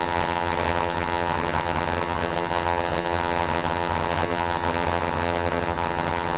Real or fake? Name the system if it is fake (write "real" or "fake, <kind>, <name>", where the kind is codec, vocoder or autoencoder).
fake, vocoder, HiFi-GAN